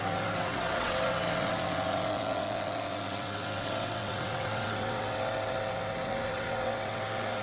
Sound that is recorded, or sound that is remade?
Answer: remade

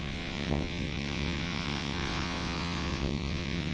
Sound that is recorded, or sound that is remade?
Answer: remade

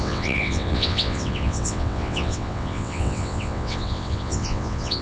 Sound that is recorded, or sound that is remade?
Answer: remade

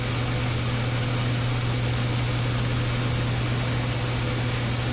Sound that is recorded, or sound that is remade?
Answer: recorded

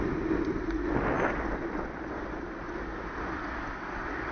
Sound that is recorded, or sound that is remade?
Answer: recorded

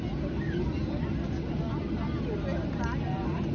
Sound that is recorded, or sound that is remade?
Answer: recorded